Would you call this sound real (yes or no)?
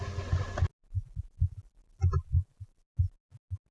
yes